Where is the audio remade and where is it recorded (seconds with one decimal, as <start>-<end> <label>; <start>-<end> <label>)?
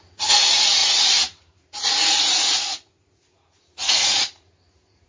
0.0-5.1 remade